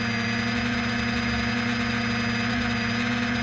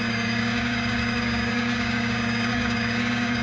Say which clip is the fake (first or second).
second